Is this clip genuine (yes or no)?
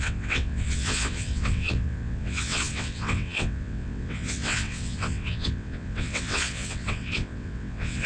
no